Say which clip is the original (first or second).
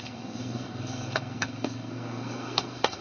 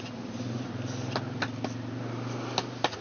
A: second